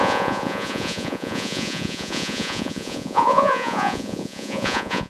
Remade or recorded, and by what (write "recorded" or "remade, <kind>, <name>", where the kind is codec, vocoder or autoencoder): remade, vocoder, Vocos